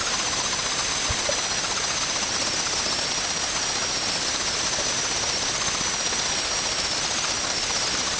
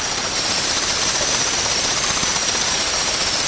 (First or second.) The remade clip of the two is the second